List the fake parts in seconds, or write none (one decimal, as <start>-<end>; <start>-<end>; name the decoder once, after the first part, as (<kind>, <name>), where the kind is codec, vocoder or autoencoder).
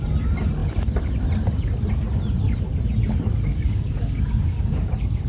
3.5-5.3 (codec, DAC)